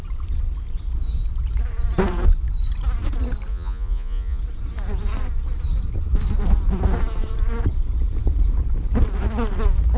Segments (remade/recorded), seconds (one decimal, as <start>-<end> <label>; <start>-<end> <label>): 0.0-3.5 recorded; 3.5-4.4 remade; 4.4-10.0 recorded